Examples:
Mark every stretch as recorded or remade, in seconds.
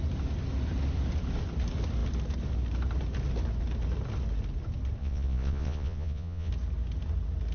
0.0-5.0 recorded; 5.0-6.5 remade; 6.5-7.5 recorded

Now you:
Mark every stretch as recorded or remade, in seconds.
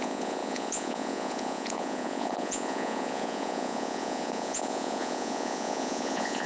0.0-6.5 remade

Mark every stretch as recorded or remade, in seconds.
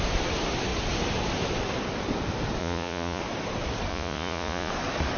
0.0-2.6 recorded; 2.6-3.2 remade; 3.2-3.9 recorded; 3.9-4.7 remade; 4.7-5.2 recorded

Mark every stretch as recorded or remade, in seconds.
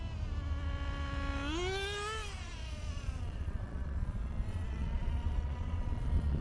0.0-2.6 recorded; 2.6-6.4 remade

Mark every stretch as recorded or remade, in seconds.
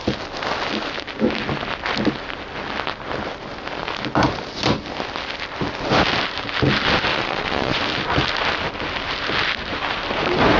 0.0-7.1 recorded; 7.1-7.8 remade; 7.8-10.6 recorded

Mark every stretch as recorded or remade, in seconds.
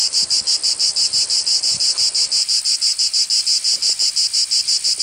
0.0-5.0 recorded